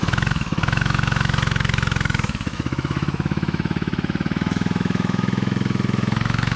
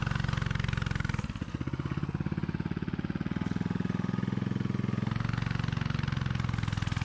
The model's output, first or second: first